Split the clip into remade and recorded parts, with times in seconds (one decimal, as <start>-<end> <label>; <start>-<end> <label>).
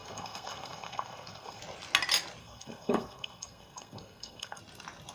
0.0-1.6 remade; 1.6-2.4 recorded; 2.4-4.6 remade; 4.6-5.1 recorded